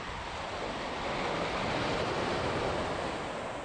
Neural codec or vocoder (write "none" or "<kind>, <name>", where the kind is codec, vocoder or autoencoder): none